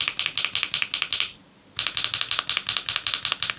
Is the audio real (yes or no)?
yes